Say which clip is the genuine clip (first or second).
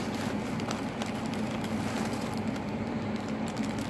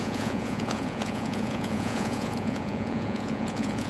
first